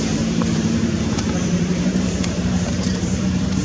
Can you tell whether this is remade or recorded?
remade